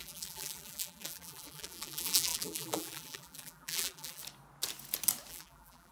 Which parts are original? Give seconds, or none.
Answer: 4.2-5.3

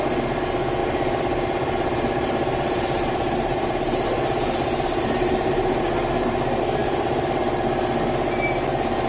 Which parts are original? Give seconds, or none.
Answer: 0.0-0.8; 5.8-6.8; 7.4-9.1

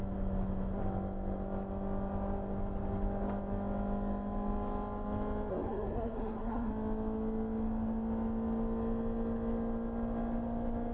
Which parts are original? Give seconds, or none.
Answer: 0.0-5.5; 6.7-10.9

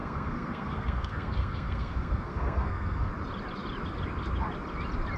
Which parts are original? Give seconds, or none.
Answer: 3.1-5.2

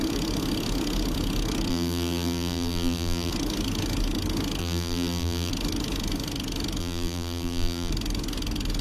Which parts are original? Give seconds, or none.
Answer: 0.0-1.7; 3.3-4.6; 5.5-6.8; 7.9-8.8

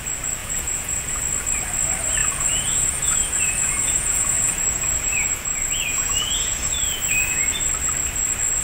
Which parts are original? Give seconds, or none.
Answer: 0.0-0.4; 1.2-2.2; 7.4-8.6